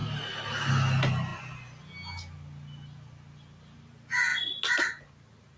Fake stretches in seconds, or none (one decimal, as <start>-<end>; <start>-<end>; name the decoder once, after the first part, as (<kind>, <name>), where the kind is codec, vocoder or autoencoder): none